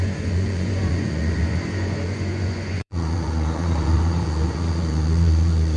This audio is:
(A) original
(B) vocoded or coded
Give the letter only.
B